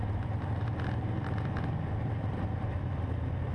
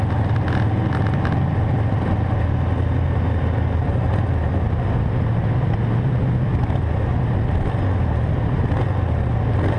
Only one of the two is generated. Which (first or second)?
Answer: first